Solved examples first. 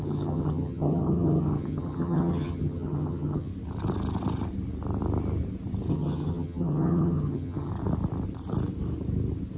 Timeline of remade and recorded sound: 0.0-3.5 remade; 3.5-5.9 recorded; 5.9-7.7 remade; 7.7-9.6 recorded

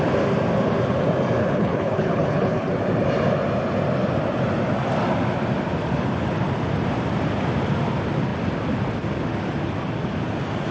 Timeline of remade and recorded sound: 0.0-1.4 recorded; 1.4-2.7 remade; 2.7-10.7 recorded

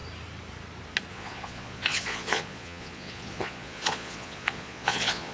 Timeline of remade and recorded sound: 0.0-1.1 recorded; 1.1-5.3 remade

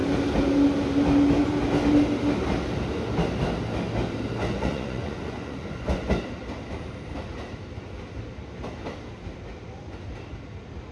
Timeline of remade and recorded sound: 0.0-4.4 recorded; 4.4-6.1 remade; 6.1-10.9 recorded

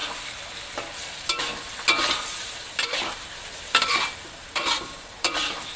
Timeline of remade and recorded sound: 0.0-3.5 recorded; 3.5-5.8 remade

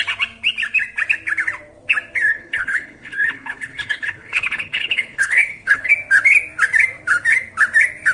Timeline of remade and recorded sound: 0.0-2.3 recorded; 2.3-5.9 remade; 5.9-8.1 recorded

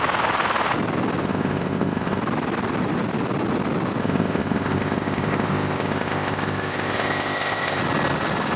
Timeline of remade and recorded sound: 0.0-1.2 recorded; 1.2-2.2 remade; 2.2-4.0 recorded; 4.0-7.8 remade; 7.8-8.6 recorded

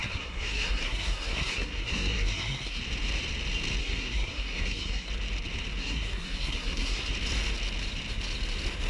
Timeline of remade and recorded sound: 0.0-2.8 remade; 2.8-3.8 recorded; 3.8-5.1 remade; 5.1-5.8 recorded; 5.8-7.1 remade; 7.1-8.9 recorded